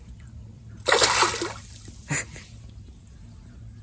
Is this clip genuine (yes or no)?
yes